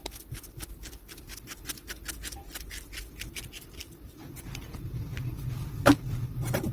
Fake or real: real